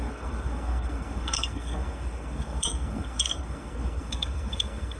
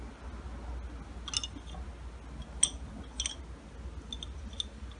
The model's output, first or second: first